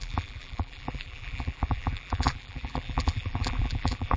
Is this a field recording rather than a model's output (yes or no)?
no